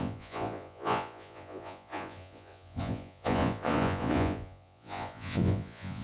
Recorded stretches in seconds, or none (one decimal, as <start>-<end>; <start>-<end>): none